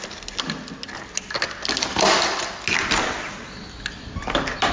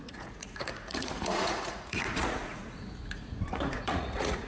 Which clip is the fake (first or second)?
second